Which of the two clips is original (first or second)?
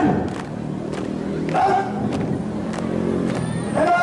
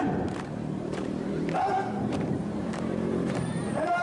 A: first